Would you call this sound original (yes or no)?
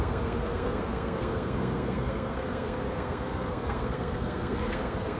no